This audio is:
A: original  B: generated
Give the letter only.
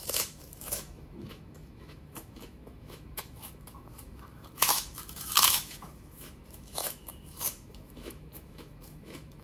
B